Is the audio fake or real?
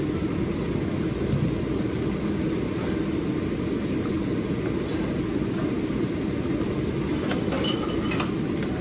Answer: real